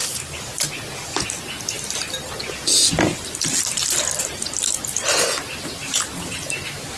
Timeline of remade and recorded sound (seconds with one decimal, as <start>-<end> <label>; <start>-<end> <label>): 0.0-4.2 recorded; 4.2-7.0 remade